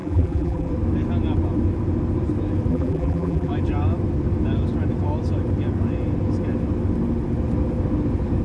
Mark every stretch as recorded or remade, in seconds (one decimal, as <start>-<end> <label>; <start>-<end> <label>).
0.0-0.7 remade; 0.7-2.7 recorded; 2.7-3.5 remade; 3.5-8.4 recorded